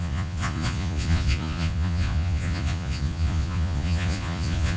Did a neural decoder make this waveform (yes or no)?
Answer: yes